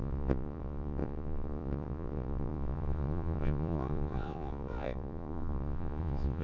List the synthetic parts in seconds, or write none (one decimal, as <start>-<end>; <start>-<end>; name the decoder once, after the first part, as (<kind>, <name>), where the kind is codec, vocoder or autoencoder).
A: 0.0-6.4 (vocoder, Vocos)